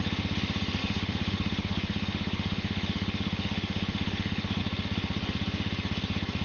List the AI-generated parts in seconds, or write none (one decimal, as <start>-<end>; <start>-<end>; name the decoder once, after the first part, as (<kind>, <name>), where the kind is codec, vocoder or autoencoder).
0.8-4.6 (autoencoder, DAC-VAE)